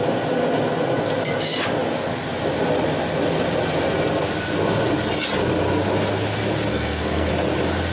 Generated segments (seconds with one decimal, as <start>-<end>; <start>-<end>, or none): 6.7-7.3